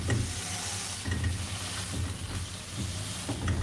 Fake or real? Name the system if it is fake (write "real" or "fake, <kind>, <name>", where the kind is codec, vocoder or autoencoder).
real